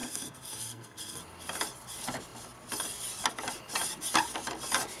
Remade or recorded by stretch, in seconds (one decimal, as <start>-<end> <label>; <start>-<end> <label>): 0.0-1.2 remade; 1.2-5.0 recorded